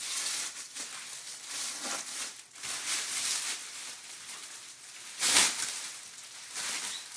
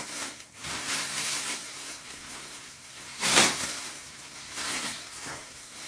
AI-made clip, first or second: second